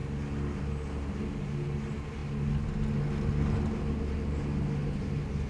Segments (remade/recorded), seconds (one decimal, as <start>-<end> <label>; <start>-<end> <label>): 0.0-5.5 recorded